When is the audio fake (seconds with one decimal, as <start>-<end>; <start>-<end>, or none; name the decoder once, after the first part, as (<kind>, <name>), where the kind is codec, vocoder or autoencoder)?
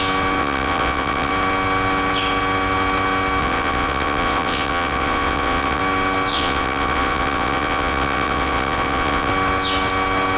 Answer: 0.4-1.3 (vocoder, WaveNeXt); 3.4-5.8; 6.3-9.3